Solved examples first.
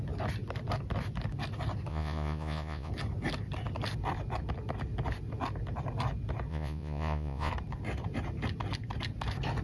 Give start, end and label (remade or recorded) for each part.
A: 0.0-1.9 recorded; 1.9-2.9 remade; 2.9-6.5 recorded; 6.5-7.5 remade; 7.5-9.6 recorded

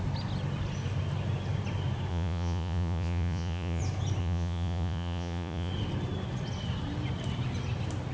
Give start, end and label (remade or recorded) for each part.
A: 0.0-2.1 recorded; 2.1-3.8 remade; 3.8-4.2 recorded; 4.2-5.7 remade; 5.7-8.1 recorded

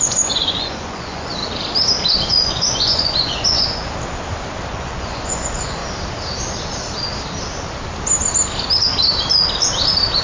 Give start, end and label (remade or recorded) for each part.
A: 0.0-1.4 remade; 1.4-2.2 recorded; 2.2-3.8 remade; 3.8-4.7 recorded; 4.7-5.8 remade; 5.8-10.2 recorded

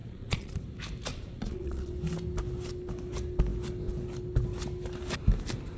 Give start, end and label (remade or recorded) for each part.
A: 0.0-0.6 remade; 0.6-1.1 recorded; 1.1-1.9 remade; 1.9-5.8 recorded

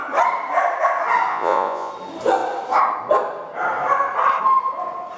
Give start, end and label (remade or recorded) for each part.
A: 0.0-1.3 recorded; 1.3-1.9 remade; 1.9-5.2 recorded